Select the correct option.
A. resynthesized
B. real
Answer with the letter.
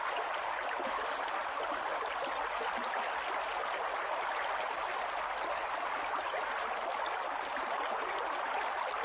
B